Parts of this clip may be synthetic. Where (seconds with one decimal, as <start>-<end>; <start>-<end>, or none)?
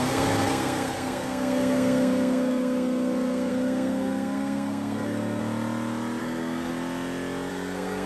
0.0-5.4; 6.2-6.7; 7.5-8.1